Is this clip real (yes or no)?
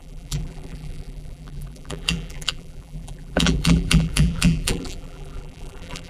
no